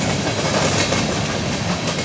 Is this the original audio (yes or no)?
yes